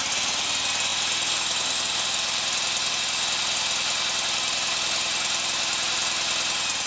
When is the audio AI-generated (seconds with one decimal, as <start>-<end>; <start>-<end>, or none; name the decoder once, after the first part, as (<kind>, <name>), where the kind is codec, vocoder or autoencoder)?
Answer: none